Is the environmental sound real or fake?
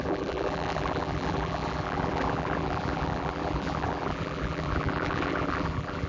fake